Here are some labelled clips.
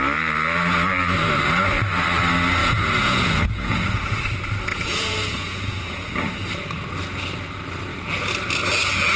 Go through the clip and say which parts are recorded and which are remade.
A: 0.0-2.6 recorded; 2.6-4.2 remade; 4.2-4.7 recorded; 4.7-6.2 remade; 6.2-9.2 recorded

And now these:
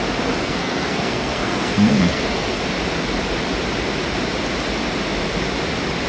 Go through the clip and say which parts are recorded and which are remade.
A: 0.0-0.4 recorded; 0.4-2.6 remade; 2.6-6.1 recorded

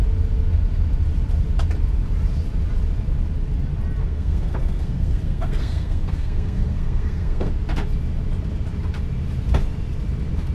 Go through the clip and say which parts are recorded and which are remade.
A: 0.0-4.0 recorded; 4.0-7.5 remade; 7.5-10.5 recorded

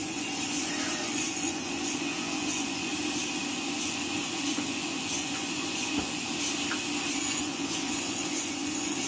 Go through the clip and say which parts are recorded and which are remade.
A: 0.0-2.9 remade; 2.9-3.5 recorded; 3.5-6.2 remade; 6.2-7.1 recorded; 7.1-9.1 remade

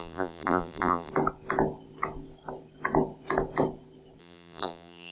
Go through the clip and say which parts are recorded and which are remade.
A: 0.0-1.1 remade; 1.1-4.2 recorded; 4.2-5.1 remade

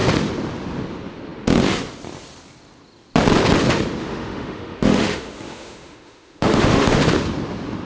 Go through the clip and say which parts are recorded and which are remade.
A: 0.0-4.0 recorded; 4.0-7.0 remade; 7.0-7.9 recorded